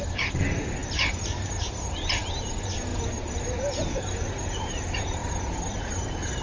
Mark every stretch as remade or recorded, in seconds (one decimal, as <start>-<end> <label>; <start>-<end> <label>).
0.0-5.2 remade; 5.2-5.8 recorded; 5.8-6.4 remade